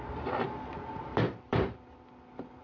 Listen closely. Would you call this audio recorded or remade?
remade